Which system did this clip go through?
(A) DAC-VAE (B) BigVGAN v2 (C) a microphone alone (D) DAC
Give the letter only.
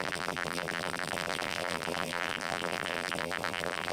B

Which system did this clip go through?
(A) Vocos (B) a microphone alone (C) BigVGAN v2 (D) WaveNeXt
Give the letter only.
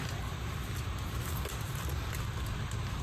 B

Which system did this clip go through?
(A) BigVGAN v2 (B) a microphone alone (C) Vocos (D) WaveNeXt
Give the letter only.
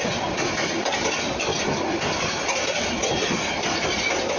B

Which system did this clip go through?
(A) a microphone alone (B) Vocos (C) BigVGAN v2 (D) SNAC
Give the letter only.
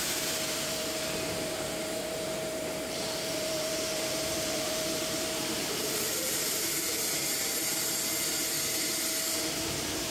C